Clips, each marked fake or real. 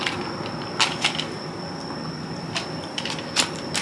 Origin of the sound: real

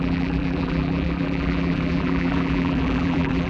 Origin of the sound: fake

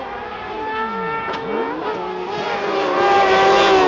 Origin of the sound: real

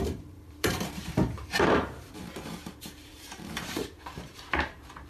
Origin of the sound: fake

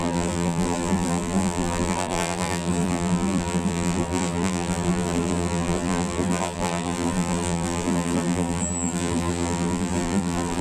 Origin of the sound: fake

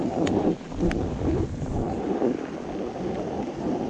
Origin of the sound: real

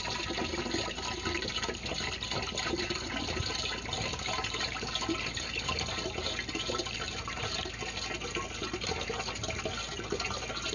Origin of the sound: real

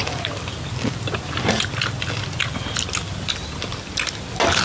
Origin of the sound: real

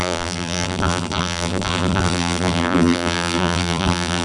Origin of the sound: fake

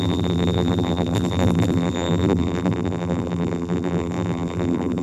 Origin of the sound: fake